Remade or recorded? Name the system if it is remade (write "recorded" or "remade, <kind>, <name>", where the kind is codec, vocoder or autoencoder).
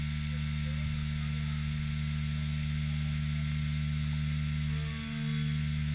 recorded